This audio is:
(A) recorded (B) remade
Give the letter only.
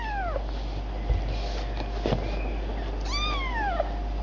A